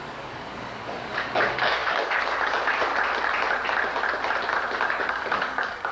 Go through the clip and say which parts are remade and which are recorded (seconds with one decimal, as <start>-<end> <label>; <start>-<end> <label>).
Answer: 0.0-2.9 remade; 2.9-5.1 recorded; 5.1-5.9 remade